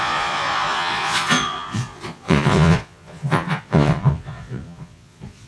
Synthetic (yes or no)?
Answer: yes